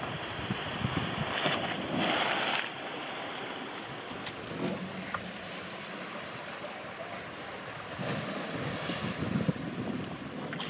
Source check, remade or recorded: recorded